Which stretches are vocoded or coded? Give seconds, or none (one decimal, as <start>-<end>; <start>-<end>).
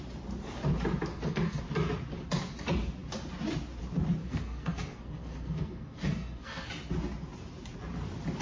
1.1-1.6; 4.2-6.7